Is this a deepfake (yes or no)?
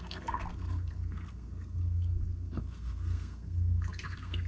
yes